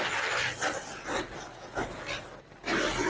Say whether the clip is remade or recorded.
recorded